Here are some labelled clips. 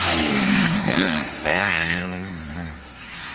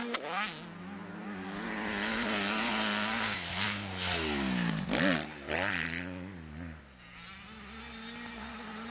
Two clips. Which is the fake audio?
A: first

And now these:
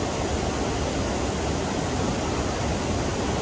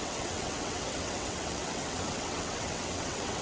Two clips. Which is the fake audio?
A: second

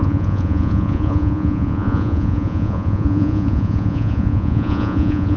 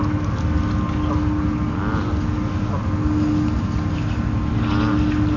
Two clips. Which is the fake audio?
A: first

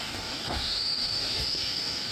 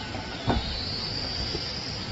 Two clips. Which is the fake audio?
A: first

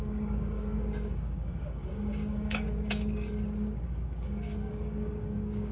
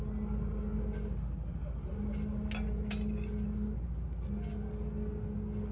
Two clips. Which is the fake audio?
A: first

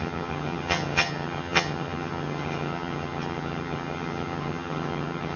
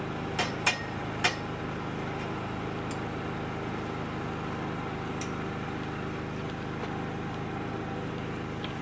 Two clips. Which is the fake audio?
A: first